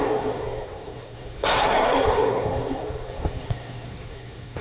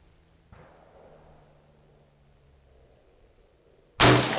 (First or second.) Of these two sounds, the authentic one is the second